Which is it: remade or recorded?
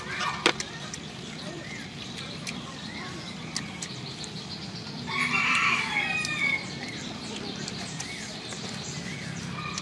remade